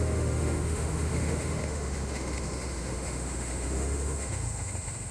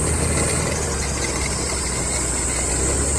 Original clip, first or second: second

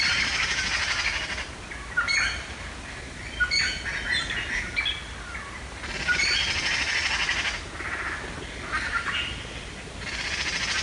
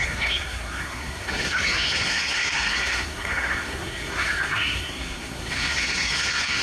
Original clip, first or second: first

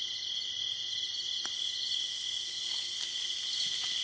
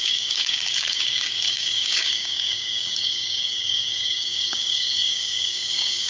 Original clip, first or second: first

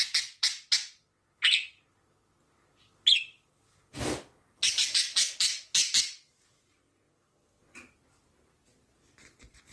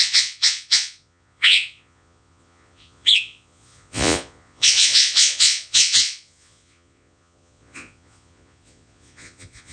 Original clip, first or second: first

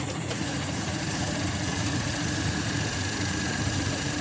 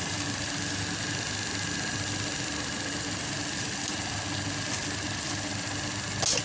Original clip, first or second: second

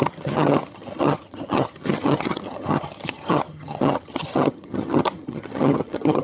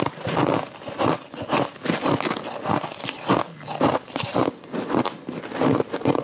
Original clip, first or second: second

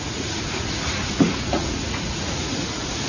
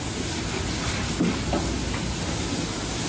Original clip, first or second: second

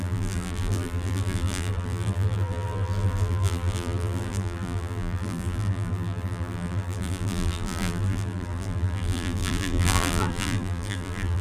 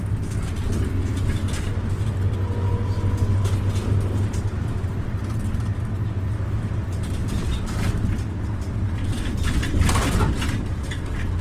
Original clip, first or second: second